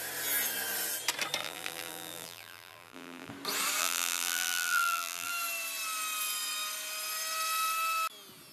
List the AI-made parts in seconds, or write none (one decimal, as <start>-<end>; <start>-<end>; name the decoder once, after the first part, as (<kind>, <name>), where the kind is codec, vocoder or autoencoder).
1.4-3.3 (vocoder, BigVGAN v2); 3.8-5.3